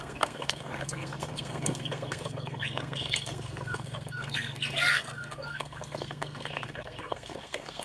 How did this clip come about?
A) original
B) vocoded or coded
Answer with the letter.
B